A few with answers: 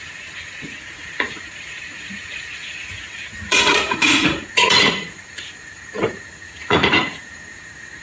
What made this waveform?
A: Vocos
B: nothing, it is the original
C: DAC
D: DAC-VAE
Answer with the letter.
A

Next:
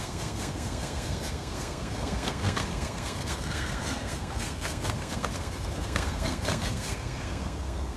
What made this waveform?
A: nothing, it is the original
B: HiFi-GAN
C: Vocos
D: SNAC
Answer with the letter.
D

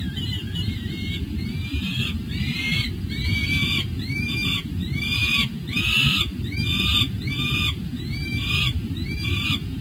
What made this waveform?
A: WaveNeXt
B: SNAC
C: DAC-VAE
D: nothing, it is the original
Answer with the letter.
D